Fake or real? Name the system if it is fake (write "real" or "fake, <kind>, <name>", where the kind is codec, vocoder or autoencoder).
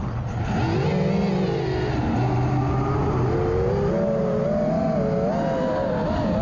real